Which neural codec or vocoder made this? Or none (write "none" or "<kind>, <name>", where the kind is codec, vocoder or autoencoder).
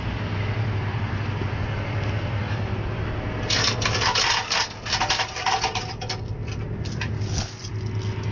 none